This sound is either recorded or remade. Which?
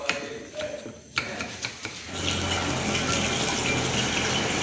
recorded